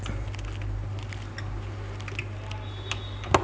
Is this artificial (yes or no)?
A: no